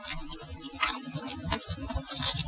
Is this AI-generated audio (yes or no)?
no